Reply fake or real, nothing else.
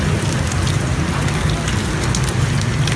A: real